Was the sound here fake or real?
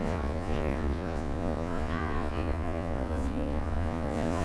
fake